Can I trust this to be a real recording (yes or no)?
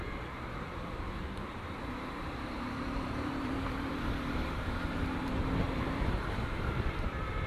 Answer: no